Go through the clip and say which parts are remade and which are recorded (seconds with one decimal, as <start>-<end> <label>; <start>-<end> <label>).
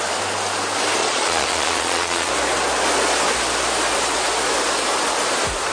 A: 0.0-1.0 recorded; 1.0-2.3 remade; 2.3-5.7 recorded